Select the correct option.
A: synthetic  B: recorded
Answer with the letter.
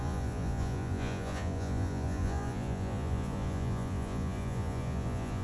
A